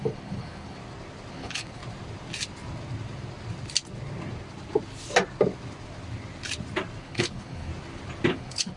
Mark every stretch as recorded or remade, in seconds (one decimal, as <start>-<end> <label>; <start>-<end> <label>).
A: 0.0-0.8 remade; 0.8-1.3 recorded; 1.3-1.8 remade; 1.8-7.0 recorded; 7.0-7.7 remade; 7.7-8.3 recorded; 8.3-8.8 remade